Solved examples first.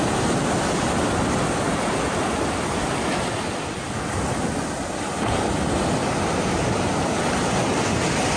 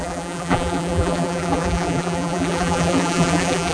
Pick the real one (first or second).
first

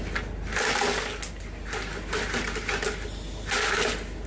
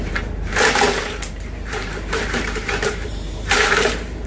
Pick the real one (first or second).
first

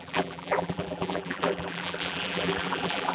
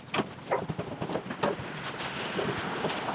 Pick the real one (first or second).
second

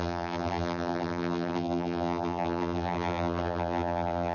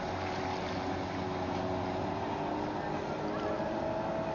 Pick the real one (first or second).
second